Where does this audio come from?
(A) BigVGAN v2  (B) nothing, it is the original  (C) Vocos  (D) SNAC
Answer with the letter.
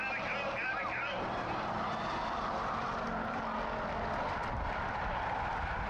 B